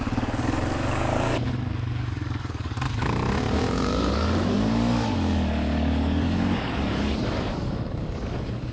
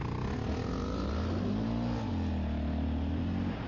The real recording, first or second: second